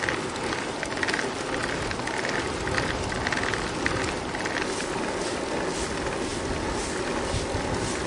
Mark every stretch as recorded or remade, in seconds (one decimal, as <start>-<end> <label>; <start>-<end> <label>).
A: 0.0-8.1 recorded